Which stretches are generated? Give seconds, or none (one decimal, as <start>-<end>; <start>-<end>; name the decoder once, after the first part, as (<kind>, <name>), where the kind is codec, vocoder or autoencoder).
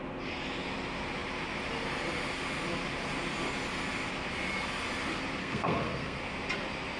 5.4-6.2 (codec, SNAC)